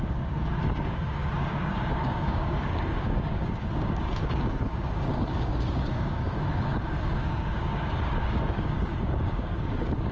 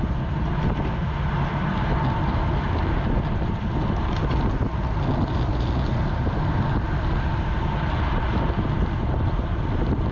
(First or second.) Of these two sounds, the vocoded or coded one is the first